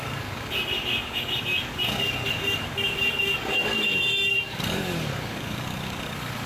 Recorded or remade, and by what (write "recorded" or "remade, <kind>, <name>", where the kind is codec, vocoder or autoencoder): remade, codec, DAC